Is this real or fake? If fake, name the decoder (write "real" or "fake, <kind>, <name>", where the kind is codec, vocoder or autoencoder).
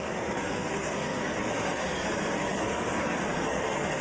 fake, codec, SNAC